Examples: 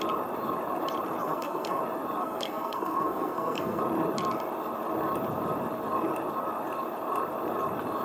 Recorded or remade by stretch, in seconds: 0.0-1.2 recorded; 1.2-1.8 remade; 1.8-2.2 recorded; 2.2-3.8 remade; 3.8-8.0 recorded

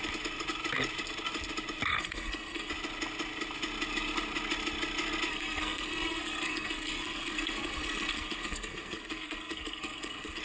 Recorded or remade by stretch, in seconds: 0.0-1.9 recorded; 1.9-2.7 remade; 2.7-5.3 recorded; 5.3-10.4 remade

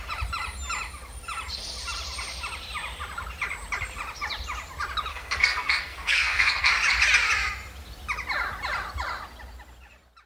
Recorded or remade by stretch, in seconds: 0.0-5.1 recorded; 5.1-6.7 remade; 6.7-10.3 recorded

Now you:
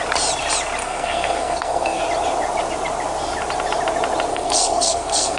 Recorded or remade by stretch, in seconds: 0.0-0.8 recorded; 0.8-2.0 remade; 2.0-4.3 recorded; 4.3-5.4 remade

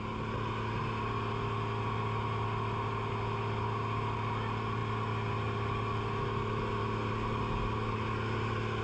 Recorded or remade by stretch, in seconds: 0.0-8.8 recorded